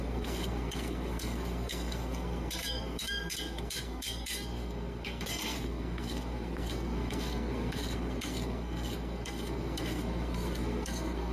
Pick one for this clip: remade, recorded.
remade